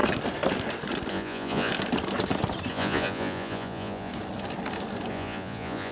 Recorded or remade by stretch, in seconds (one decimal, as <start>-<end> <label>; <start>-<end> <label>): 0.0-1.1 recorded; 1.1-1.7 remade; 1.7-2.7 recorded; 2.7-4.1 remade; 4.1-5.1 recorded; 5.1-5.9 remade